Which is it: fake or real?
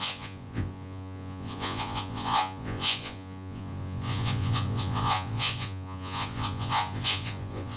fake